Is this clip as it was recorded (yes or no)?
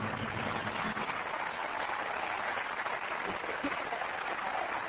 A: yes